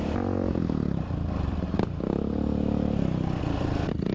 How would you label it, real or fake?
real